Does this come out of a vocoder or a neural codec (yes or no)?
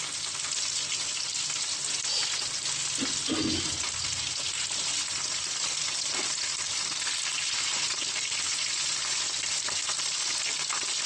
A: no